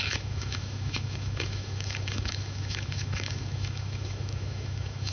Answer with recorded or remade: remade